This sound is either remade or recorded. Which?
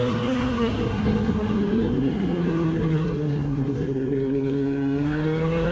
remade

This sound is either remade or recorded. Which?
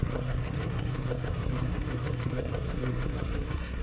remade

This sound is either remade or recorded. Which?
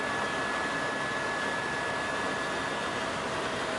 recorded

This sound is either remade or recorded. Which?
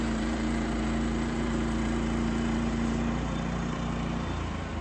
remade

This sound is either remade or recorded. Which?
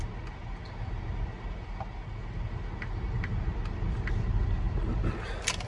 recorded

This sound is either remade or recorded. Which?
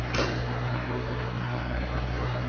remade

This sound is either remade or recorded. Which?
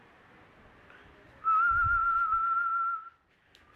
recorded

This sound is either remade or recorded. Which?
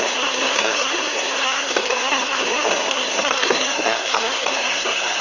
remade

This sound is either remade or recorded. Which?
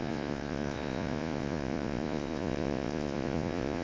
remade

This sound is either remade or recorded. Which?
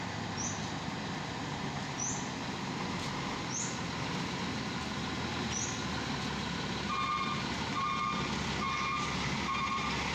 recorded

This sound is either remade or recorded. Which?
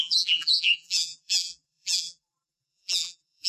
remade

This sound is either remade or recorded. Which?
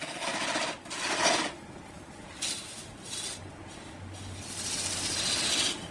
recorded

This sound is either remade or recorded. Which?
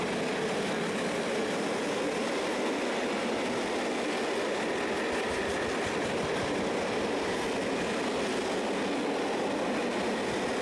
recorded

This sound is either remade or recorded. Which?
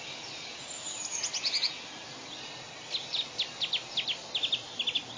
recorded